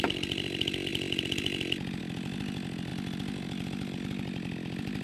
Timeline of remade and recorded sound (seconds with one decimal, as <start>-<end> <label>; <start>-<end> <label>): 0.0-0.9 remade; 0.9-2.0 recorded; 2.0-5.0 remade